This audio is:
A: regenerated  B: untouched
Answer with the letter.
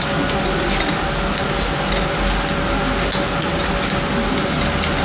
B